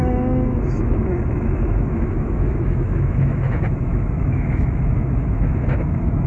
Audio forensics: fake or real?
fake